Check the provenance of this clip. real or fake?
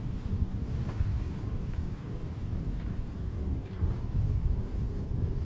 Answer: fake